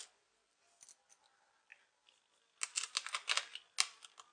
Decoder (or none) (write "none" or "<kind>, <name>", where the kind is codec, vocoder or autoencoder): none